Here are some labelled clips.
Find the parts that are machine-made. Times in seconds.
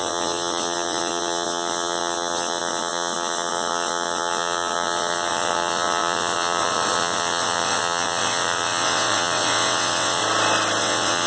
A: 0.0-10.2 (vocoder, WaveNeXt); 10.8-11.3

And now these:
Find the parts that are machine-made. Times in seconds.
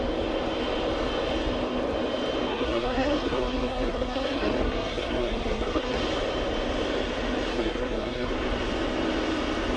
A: 2.5-6.0 (codec, SNAC); 7.5-8.3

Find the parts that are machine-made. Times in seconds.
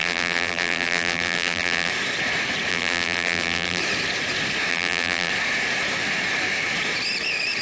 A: 0.0-1.9 (vocoder, BigVGAN v2); 2.7-3.8; 4.7-5.3